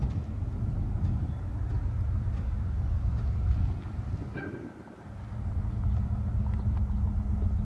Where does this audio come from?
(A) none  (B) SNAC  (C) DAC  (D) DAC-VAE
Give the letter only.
A